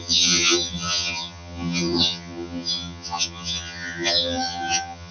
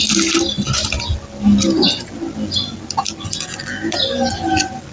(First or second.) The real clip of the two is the second